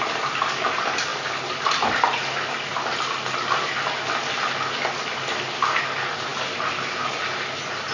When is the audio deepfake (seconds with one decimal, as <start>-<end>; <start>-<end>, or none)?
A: none